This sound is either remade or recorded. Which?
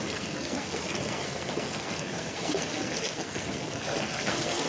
remade